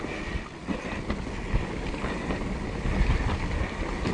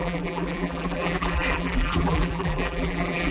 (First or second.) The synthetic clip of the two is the second